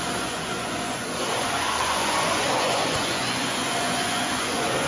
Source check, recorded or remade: remade